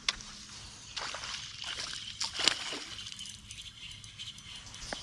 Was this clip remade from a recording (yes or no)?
no